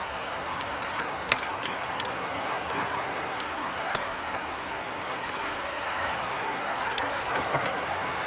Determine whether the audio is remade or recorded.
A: remade